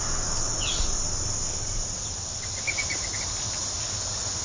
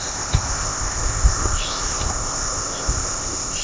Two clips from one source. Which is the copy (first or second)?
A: second